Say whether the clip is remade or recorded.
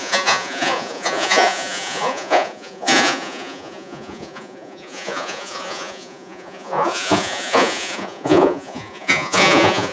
remade